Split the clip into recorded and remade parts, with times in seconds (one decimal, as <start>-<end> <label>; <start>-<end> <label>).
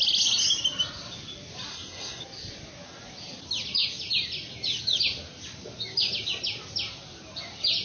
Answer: 0.0-1.7 recorded; 1.7-2.2 remade; 2.2-7.8 recorded